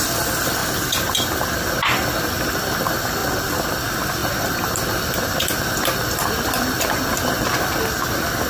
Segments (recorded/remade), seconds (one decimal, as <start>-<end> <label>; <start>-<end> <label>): 0.0-3.2 recorded; 3.2-3.7 remade; 3.7-4.2 recorded; 4.2-7.7 remade; 7.7-8.5 recorded